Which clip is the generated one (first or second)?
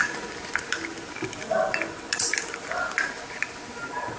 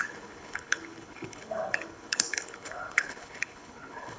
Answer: second